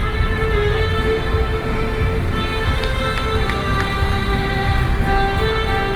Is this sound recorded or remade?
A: recorded